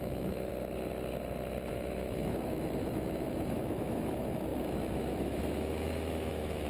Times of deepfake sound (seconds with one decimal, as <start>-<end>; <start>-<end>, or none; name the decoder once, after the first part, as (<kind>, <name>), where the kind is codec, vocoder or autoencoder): 0.0-0.5 (autoencoder, DAC-VAE); 1.7-6.7